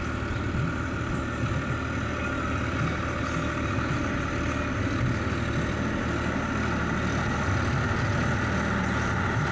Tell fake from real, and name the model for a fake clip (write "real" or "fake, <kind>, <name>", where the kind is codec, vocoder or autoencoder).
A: real